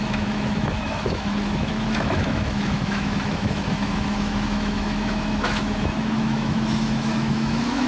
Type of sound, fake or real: fake